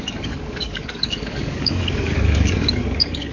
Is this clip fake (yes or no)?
yes